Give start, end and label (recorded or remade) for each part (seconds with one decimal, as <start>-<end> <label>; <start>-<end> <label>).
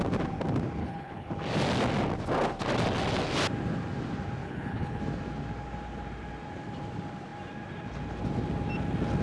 0.0-0.8 recorded; 0.8-1.3 remade; 1.3-4.4 recorded; 4.4-5.0 remade; 5.0-9.2 recorded